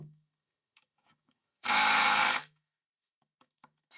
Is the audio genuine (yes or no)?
no